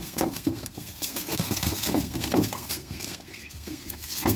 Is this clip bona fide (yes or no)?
no